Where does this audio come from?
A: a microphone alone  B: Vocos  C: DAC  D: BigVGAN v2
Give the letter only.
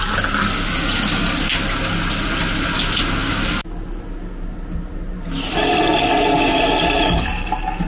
A